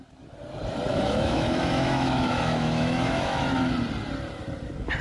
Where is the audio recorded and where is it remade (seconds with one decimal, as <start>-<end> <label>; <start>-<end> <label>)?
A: 0.0-0.9 recorded; 0.9-3.7 remade; 3.7-5.0 recorded